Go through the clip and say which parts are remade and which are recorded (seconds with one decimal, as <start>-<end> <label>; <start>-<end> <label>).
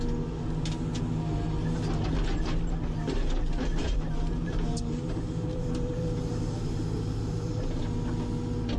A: 0.0-3.8 recorded; 3.8-7.8 remade; 7.8-8.8 recorded